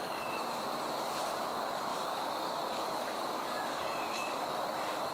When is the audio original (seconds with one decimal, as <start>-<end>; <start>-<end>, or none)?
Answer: 0.4-0.9